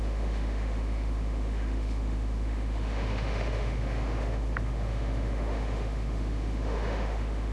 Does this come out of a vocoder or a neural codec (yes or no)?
yes